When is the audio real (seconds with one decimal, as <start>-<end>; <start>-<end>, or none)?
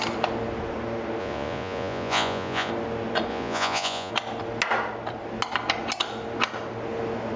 0.0-1.2; 2.7-3.3; 4.1-7.4